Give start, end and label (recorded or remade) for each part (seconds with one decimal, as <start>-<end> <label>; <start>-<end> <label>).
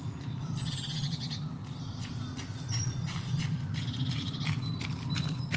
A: 0.0-5.6 recorded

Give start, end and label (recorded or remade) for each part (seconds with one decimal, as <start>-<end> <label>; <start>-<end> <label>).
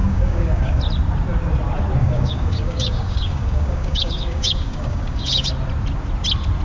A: 0.0-0.8 remade; 0.8-2.0 recorded; 2.0-5.5 remade; 5.5-6.6 recorded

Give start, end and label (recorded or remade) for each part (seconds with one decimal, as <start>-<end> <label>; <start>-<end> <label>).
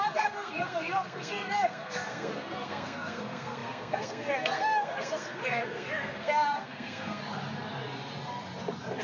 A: 0.0-7.2 remade; 7.2-9.0 recorded